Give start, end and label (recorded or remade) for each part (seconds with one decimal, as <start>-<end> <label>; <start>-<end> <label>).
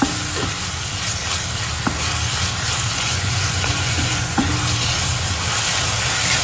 0.0-2.9 recorded; 2.9-4.5 remade; 4.5-6.4 recorded